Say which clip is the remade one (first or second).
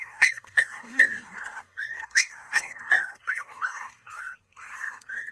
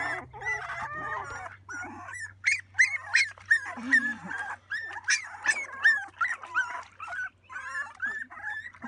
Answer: first